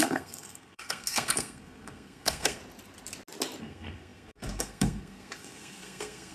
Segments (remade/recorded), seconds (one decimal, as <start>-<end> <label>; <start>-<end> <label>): 0.0-2.6 remade; 2.6-3.6 recorded; 3.6-6.3 remade